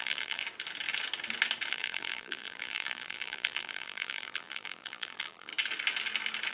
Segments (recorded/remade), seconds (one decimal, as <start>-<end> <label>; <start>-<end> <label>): 0.0-0.4 remade; 0.4-1.7 recorded; 1.7-5.5 remade; 5.5-6.5 recorded